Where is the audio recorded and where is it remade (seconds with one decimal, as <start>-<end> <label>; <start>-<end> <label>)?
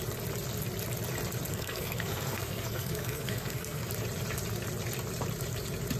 0.0-1.5 recorded; 1.5-3.9 remade; 3.9-6.0 recorded